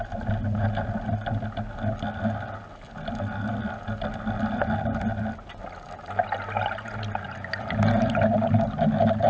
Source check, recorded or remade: recorded